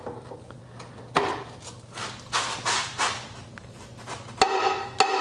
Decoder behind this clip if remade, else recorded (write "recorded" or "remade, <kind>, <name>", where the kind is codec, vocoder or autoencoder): recorded